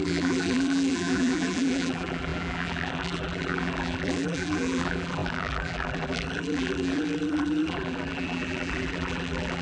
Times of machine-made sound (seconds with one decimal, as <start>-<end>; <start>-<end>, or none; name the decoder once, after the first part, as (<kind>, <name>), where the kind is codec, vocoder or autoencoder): 0.0-9.6 (vocoder, BigVGAN v2)